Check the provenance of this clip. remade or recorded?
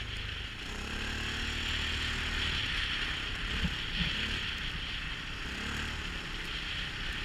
recorded